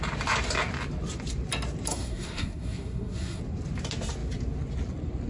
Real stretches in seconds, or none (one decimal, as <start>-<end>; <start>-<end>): 0.0-1.9; 3.4-5.3